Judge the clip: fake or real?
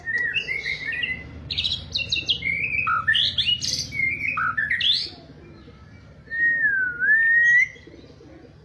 real